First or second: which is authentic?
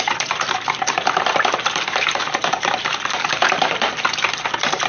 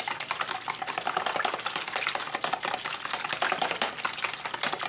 second